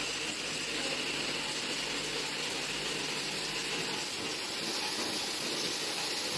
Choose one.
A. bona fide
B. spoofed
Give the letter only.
A